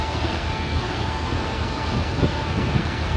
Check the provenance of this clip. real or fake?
fake